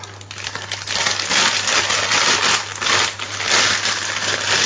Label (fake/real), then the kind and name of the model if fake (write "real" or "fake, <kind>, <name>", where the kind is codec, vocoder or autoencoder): real